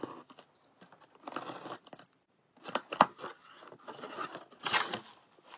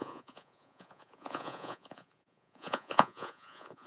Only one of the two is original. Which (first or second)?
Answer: first